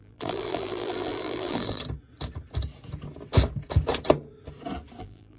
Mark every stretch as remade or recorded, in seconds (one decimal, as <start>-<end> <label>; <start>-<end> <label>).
0.0-1.8 remade; 1.8-5.0 recorded; 5.0-5.4 remade